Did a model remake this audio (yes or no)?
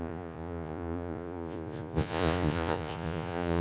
yes